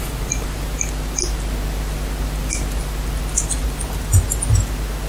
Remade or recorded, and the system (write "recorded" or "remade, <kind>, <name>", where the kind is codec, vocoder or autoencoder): recorded